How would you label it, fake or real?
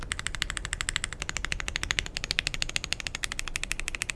real